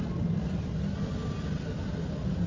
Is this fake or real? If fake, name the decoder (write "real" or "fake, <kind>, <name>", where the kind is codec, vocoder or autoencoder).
real